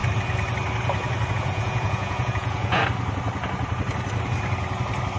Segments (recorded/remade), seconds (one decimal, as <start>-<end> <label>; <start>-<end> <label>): 0.0-1.3 recorded; 1.3-2.8 remade; 2.8-5.2 recorded